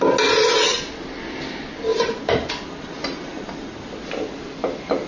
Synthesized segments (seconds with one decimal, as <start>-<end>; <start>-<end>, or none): 1.9-2.5